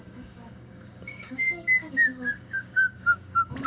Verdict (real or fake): fake